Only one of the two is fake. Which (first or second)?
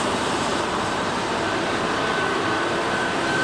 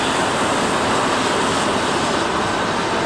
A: first